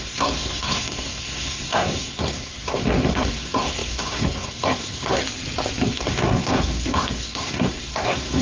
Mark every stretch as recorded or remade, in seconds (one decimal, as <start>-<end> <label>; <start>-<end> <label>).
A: 0.0-5.2 remade; 5.2-5.9 recorded; 5.9-8.4 remade